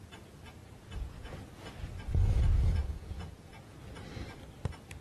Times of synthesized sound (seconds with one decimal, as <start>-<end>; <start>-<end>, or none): 0.6-1.5; 2.8-3.8